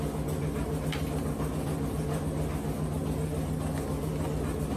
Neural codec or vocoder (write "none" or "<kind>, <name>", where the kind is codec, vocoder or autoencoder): none